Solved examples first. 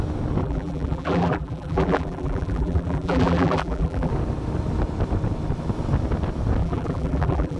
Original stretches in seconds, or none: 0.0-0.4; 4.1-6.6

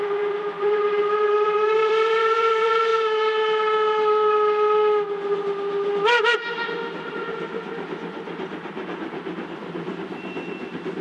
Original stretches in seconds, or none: 2.9-7.1